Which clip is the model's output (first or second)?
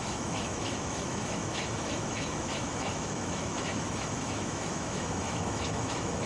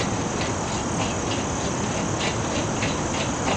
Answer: first